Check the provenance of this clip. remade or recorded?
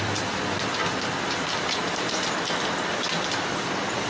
remade